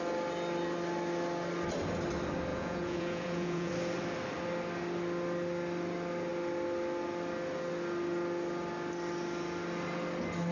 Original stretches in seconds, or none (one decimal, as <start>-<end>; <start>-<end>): 0.0-2.5; 3.7-10.5